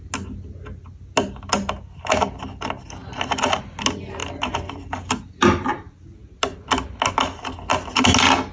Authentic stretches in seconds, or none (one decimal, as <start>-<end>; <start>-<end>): 0.0-8.5